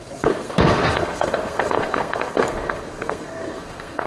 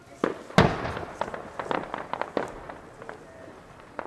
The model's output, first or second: first